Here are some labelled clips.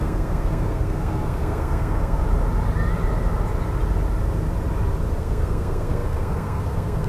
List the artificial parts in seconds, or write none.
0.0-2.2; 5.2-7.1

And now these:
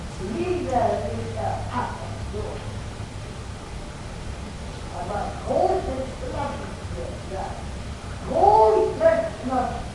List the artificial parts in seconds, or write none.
4.7-5.3

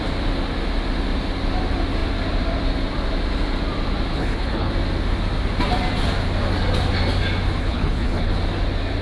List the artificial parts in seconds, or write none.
4.1-4.7; 7.6-8.3

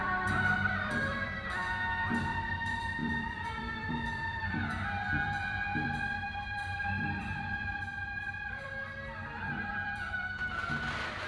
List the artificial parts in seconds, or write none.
0.0-8.8; 9.7-11.3

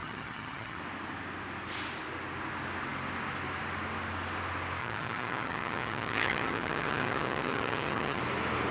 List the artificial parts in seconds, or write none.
0.0-0.8; 4.8-8.2

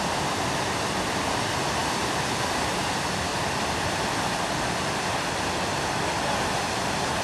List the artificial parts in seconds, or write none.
0.0-1.8; 2.3-3.3

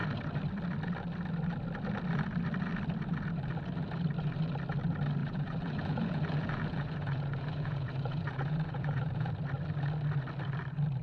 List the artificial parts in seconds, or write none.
5.2-9.3